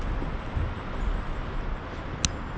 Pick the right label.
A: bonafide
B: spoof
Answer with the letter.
A